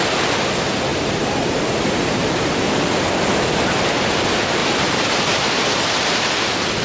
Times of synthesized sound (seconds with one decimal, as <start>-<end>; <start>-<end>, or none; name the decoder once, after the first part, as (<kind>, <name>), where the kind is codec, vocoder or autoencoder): 0.9-2.7 (vocoder, BigVGAN v2); 4.6-6.0